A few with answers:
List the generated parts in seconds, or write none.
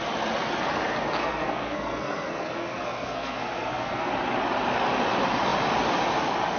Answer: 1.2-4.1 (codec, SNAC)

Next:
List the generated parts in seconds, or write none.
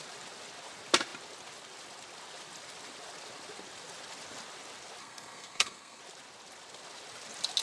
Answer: 5.0-6.0 (codec, SNAC)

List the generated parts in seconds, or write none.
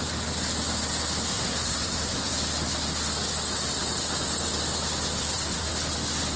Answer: 1.3-2.3 (codec, SNAC); 5.2-5.7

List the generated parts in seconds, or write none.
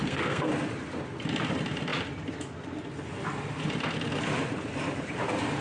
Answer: 0.0-0.5 (codec, SNAC)